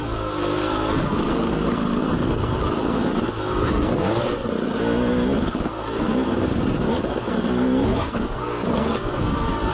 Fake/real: fake